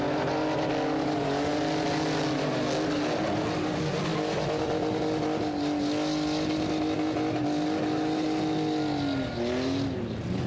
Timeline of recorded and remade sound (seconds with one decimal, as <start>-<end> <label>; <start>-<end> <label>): 0.0-10.5 recorded